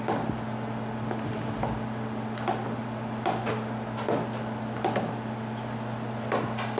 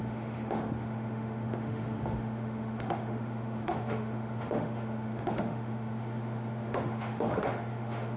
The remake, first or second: second